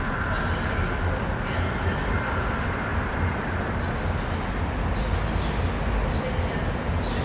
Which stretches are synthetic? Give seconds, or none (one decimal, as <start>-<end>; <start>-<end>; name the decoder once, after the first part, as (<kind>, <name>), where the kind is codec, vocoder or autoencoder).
none